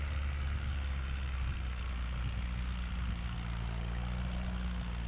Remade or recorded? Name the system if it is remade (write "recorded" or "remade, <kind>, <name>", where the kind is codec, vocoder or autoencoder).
recorded